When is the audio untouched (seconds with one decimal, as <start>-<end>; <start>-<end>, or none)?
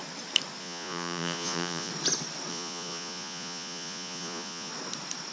0.0-0.6; 1.9-2.5; 4.7-5.3